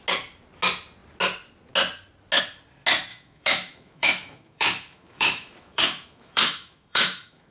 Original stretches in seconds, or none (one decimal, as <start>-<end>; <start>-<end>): 0.0-3.1